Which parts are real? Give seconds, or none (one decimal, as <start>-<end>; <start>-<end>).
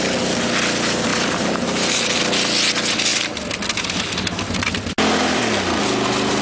0.0-1.1; 2.2-6.4